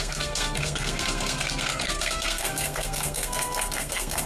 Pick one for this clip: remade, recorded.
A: remade